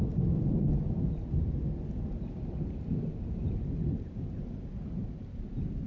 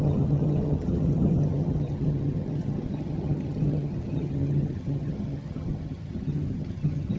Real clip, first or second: first